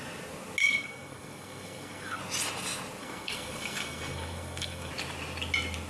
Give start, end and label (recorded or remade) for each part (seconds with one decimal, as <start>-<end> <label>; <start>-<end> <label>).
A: 0.0-0.6 recorded; 0.6-2.2 remade; 2.2-3.0 recorded; 3.0-4.9 remade; 4.9-5.9 recorded